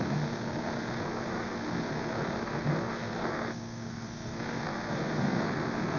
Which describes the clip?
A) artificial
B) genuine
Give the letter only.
A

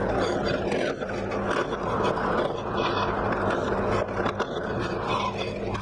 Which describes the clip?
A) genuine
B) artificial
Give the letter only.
A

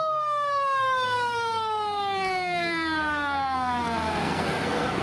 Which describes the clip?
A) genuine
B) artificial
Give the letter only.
B